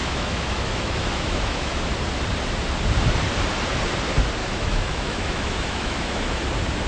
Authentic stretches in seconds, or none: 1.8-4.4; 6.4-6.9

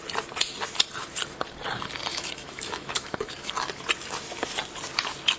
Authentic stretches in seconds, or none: 0.0-2.1; 3.5-5.4